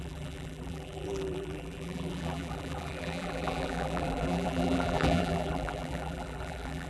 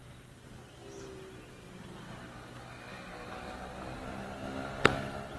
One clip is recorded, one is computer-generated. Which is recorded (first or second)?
second